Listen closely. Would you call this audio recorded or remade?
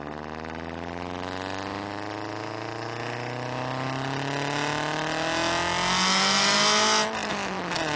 recorded